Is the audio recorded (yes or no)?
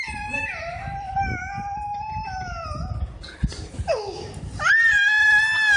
yes